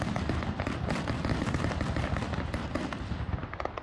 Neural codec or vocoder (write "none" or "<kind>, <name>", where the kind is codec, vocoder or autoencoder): none